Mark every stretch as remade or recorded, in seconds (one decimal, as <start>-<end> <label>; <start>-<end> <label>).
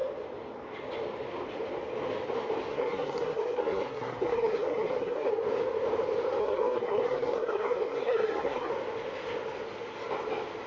0.0-2.7 recorded; 2.7-5.3 remade; 5.3-6.4 recorded; 6.4-8.7 remade; 8.7-10.7 recorded